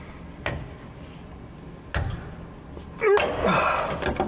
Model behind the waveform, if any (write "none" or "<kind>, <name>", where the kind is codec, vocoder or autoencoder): none